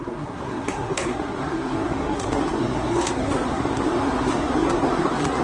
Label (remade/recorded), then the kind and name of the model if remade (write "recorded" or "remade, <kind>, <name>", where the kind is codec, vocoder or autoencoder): remade, codec, SNAC